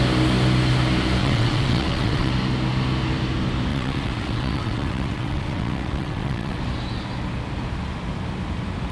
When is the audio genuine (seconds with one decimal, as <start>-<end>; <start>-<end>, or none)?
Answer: 0.0-1.2; 2.3-3.7; 6.6-8.9